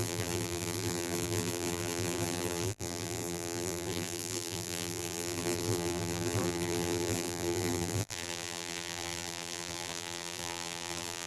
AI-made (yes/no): yes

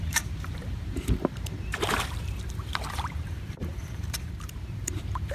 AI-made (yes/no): yes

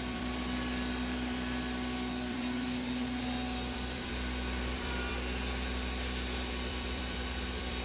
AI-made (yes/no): yes